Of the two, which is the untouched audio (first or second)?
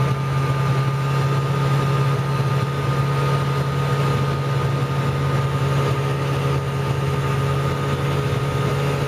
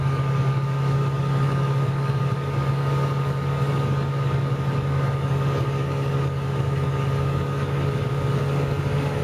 first